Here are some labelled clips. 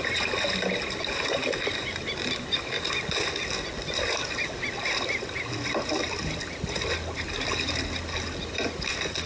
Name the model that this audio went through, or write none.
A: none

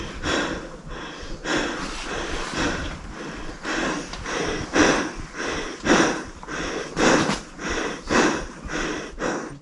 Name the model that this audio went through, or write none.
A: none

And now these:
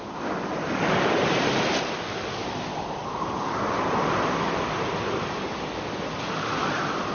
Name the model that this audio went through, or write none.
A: none